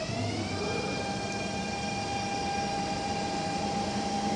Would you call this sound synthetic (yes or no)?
no